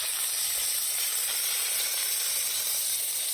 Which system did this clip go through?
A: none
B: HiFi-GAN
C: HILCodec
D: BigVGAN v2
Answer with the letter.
D